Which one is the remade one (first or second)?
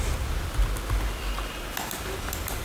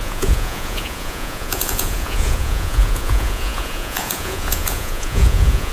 second